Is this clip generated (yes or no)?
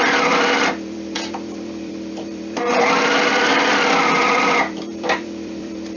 yes